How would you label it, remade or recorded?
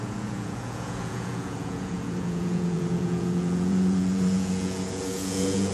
remade